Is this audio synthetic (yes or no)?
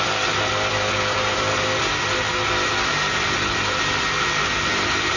no